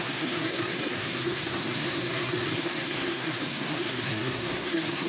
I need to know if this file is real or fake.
fake